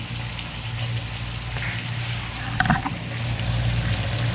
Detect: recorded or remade recorded